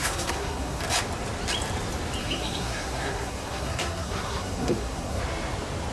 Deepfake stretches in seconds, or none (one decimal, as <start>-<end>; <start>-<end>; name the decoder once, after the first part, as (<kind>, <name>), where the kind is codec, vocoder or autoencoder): 0.0-0.8 (codec, SNAC); 2.2-5.2